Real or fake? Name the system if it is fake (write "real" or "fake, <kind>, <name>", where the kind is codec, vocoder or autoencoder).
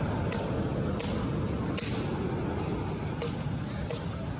real